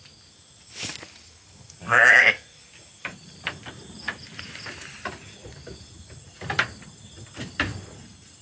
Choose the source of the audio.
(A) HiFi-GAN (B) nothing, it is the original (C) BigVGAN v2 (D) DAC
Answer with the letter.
B